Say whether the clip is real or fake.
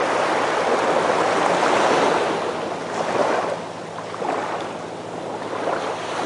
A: real